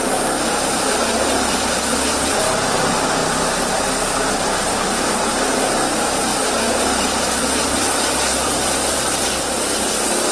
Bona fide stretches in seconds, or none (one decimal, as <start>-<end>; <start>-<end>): 3.2-3.7; 6.3-6.8